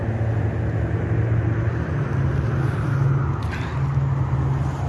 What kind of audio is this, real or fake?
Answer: real